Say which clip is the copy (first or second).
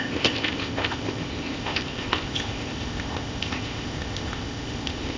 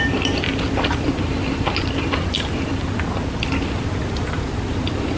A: first